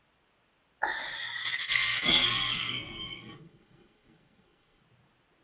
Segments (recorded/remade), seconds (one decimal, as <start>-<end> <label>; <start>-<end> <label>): 0.0-1.6 recorded; 1.6-4.8 remade; 4.8-5.4 recorded